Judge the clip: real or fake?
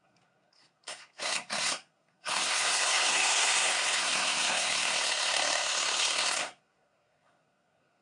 fake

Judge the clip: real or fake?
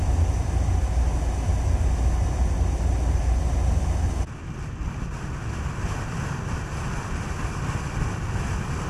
real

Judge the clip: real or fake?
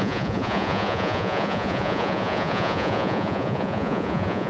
fake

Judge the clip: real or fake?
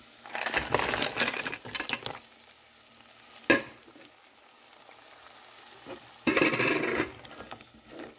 real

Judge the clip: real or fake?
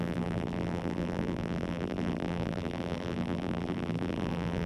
fake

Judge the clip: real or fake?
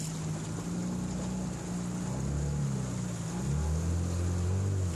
real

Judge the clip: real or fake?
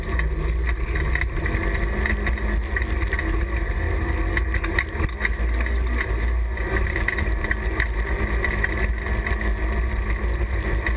real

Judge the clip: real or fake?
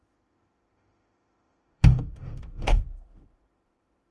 fake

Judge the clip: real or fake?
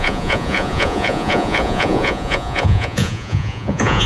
fake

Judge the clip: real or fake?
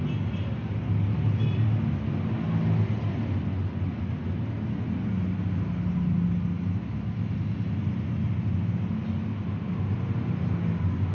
real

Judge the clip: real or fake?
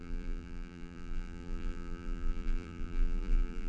fake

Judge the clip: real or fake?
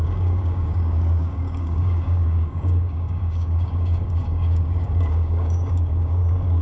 fake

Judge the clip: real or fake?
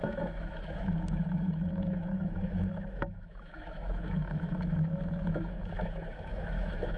fake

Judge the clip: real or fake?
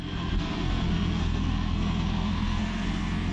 fake